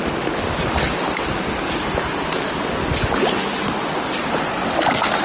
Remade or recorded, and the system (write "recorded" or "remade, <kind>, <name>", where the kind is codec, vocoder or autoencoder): recorded